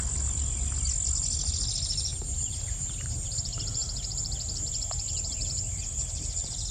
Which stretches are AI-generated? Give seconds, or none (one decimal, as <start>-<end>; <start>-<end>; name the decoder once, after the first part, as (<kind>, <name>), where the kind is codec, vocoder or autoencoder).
2.1-6.1 (vocoder, BigVGAN v2)